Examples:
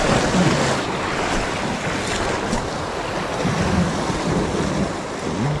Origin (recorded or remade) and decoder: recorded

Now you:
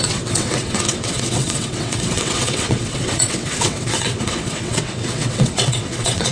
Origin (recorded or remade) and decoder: remade, vocoder, WaveNeXt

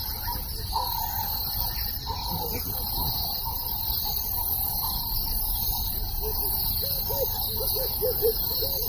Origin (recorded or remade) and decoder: recorded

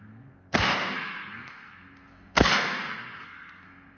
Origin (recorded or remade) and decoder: remade, codec, SNAC